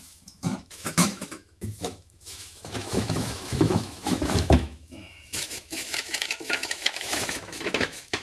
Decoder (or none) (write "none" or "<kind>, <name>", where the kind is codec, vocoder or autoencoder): autoencoder, DAC-VAE